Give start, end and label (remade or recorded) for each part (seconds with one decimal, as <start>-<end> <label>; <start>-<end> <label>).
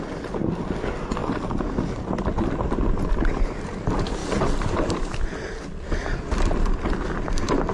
0.0-4.2 recorded; 4.2-5.1 remade; 5.1-7.7 recorded